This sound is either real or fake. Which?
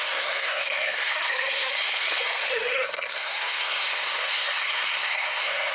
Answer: fake